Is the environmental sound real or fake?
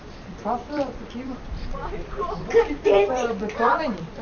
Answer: fake